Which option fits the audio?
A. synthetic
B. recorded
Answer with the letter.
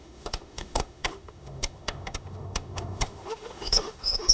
A